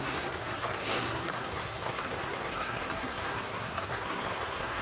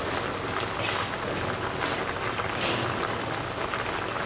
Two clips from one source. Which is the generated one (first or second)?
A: first